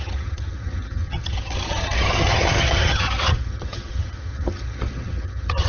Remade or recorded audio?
remade